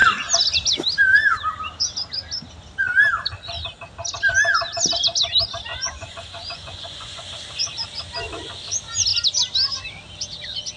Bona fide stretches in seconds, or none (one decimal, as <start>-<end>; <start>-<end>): 0.0-5.7; 7.3-10.8